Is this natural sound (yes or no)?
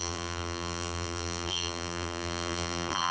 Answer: no